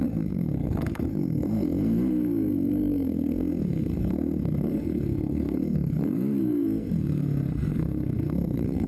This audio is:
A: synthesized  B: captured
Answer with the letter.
A